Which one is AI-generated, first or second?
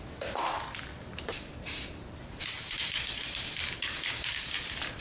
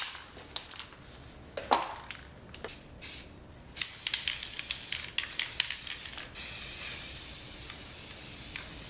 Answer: first